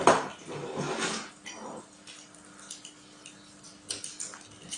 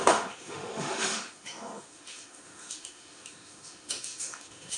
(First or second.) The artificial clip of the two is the second